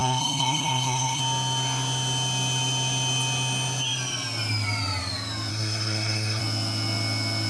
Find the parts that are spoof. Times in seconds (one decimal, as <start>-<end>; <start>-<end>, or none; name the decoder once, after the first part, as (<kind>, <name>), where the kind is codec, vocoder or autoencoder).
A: 0.0-1.2 (codec, SNAC); 5.5-6.4